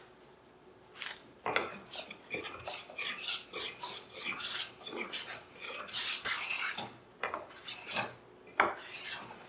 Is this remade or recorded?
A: recorded